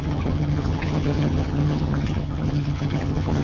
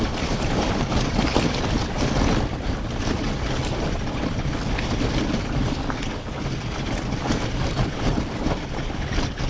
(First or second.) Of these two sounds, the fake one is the first